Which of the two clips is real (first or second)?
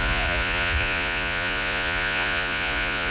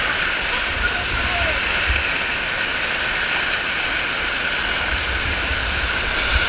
second